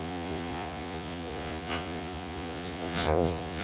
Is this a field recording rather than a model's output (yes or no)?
no